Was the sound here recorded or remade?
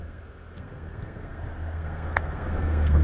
remade